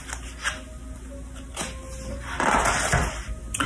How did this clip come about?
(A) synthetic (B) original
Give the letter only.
B